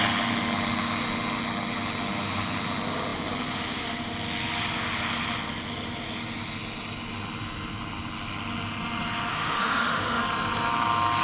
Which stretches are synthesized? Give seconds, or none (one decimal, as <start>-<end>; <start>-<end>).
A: 9.3-10.2